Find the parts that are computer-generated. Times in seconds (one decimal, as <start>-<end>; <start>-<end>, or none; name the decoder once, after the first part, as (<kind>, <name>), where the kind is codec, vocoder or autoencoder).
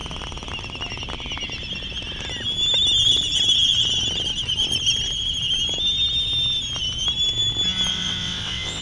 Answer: 7.9-8.8 (vocoder, WaveNeXt)